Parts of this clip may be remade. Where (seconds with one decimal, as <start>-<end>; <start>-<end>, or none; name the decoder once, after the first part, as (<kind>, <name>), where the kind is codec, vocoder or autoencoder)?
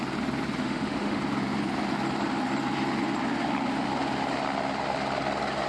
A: 0.6-1.2 (autoencoder, DAC-VAE)